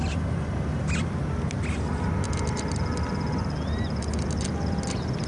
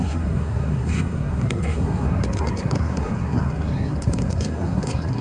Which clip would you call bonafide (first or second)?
first